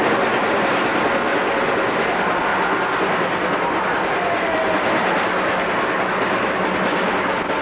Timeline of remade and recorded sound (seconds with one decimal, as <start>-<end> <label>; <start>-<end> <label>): 0.0-7.6 recorded